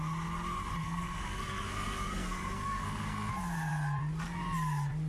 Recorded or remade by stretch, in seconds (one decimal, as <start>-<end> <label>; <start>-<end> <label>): 0.0-0.8 recorded; 0.8-3.3 remade; 3.3-5.1 recorded